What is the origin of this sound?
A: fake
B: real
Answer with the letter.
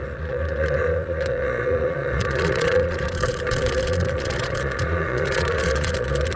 A